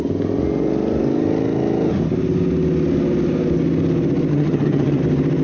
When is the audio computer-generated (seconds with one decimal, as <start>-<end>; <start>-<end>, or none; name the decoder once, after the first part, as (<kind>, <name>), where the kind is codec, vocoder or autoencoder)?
4.3-5.0 (vocoder, HiFi-GAN)